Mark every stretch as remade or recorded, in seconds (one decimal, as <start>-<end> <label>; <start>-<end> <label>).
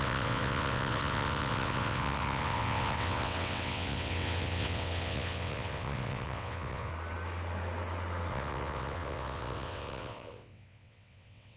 0.0-6.9 remade; 6.9-8.3 recorded; 8.3-11.6 remade